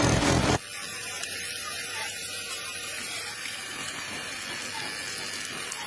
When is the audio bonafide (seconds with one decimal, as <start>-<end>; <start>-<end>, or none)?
0.0-0.9; 4.4-5.9